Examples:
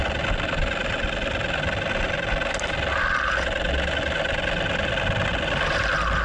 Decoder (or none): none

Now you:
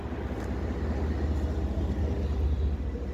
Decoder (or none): none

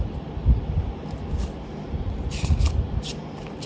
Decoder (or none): none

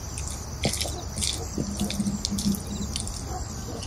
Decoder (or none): none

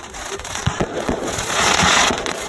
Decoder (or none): vocoder, Vocos